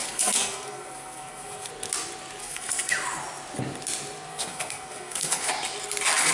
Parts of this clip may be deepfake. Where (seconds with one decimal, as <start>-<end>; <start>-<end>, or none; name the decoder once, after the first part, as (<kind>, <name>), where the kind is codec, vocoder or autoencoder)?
0.0-1.7 (codec, SNAC); 2.4-2.9; 4.3-5.5